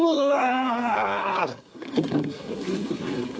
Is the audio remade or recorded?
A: remade